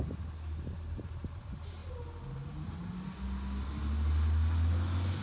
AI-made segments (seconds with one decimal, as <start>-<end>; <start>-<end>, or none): none